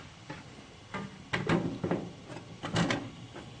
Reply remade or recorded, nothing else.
recorded